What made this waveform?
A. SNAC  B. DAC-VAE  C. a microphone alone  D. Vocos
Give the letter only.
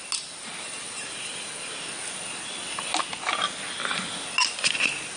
C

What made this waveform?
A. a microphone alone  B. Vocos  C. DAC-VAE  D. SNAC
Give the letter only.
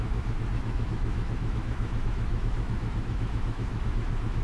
C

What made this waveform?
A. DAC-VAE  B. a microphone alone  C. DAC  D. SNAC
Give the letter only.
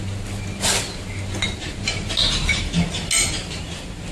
B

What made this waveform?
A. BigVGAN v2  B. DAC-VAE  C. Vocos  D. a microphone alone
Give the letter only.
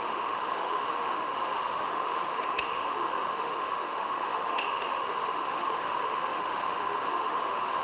B